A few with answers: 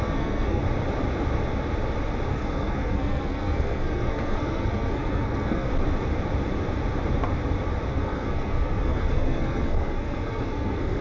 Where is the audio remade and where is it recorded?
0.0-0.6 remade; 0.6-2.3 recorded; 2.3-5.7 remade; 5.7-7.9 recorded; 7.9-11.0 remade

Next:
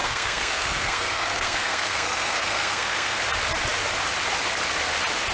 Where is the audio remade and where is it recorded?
0.0-3.2 remade; 3.2-5.3 recorded

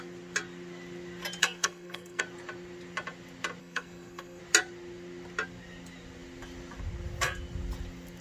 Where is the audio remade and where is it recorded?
0.0-1.4 recorded; 1.4-2.2 remade; 2.2-3.6 recorded; 3.6-4.4 remade; 4.4-8.2 recorded

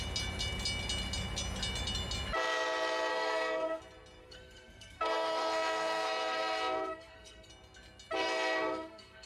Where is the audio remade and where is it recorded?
0.0-3.1 recorded; 3.1-3.8 remade; 3.8-4.2 recorded; 4.2-7.5 remade; 7.5-8.2 recorded; 8.2-9.3 remade